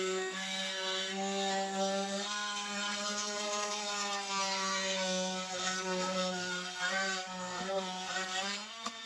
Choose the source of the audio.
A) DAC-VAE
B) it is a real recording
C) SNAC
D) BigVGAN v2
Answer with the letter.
C